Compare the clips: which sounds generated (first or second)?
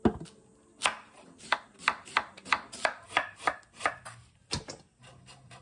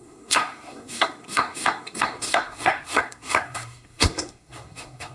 second